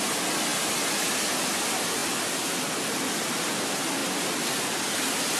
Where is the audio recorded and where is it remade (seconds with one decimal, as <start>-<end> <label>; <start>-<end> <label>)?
0.0-5.4 recorded